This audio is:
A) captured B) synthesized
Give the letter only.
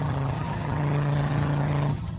B